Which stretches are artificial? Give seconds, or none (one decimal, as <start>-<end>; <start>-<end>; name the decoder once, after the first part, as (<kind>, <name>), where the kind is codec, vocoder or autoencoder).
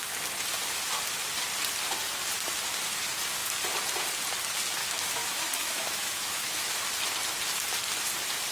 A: 4.8-6.8 (autoencoder, DAC-VAE)